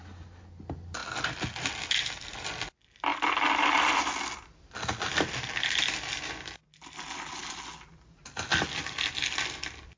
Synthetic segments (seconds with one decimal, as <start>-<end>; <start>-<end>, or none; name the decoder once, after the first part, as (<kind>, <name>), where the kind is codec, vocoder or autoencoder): none